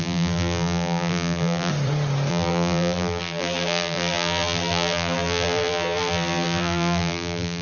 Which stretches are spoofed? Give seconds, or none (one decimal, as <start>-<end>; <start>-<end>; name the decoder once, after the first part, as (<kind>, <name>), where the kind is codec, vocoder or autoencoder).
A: 0.0-1.7 (vocoder, BigVGAN v2); 2.3-7.6